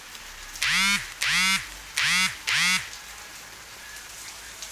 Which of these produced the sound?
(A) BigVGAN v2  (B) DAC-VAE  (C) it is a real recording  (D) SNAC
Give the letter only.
C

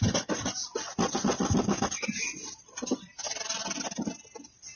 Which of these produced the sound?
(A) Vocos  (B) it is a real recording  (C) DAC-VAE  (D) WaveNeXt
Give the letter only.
B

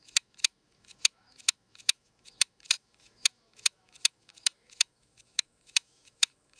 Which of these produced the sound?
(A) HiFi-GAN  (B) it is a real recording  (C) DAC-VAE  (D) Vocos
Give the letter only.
C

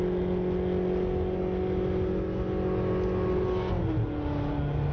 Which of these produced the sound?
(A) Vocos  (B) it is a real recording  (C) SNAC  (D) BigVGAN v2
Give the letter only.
B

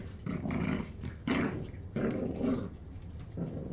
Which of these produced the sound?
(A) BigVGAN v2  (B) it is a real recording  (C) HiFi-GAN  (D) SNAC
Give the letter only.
B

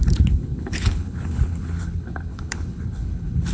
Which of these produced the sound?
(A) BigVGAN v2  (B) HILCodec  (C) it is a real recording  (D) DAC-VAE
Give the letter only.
B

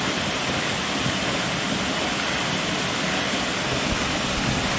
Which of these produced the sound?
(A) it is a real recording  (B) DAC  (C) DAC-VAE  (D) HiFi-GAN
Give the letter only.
A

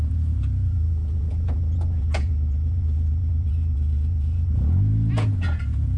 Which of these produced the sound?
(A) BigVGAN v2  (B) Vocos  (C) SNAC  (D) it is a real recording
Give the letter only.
B